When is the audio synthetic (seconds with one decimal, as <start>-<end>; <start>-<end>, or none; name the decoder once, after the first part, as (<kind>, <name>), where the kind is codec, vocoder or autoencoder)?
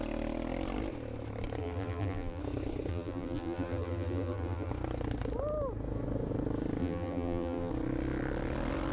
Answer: 1.6-2.4 (vocoder, BigVGAN v2); 2.9-4.7; 6.8-7.7